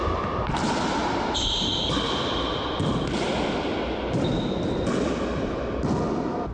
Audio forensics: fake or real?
real